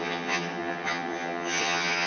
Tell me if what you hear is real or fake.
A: fake